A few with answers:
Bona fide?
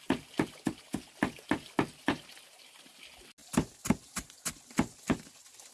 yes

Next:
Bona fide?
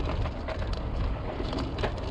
yes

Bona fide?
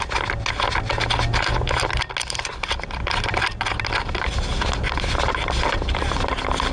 yes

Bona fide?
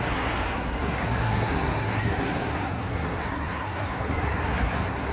no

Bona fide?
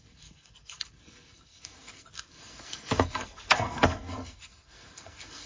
no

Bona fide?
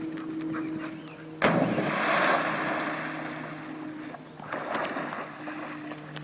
yes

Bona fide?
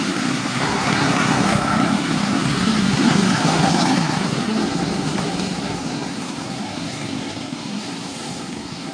no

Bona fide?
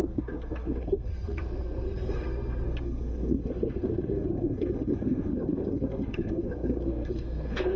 no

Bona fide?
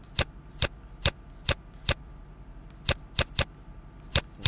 yes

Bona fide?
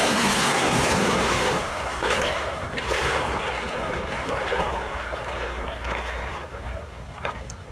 no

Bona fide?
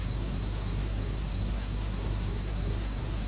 no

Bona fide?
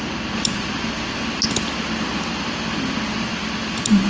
yes